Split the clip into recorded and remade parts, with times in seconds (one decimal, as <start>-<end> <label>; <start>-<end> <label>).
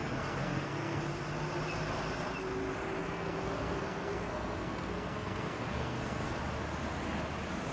0.0-1.0 remade; 1.0-3.0 recorded; 3.0-6.4 remade; 6.4-7.7 recorded